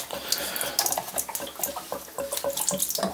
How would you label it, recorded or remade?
recorded